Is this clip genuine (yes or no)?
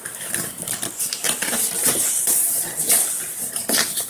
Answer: yes